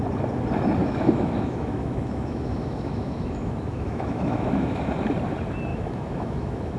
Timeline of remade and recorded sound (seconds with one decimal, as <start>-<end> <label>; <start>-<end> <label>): 0.0-0.8 recorded; 0.8-4.9 remade; 4.9-5.7 recorded; 5.7-6.8 remade